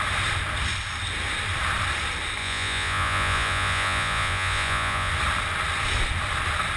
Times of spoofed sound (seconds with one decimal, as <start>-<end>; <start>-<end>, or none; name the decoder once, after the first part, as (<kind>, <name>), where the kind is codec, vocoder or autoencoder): 2.4-5.1 (vocoder, Vocos)